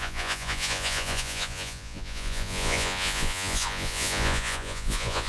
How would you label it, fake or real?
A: fake